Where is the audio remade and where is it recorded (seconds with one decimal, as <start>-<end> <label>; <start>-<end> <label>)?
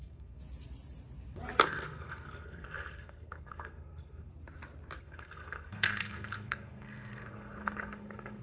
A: 0.0-0.4 remade; 0.4-1.6 recorded; 1.6-4.3 remade; 4.3-5.0 recorded; 5.0-8.4 remade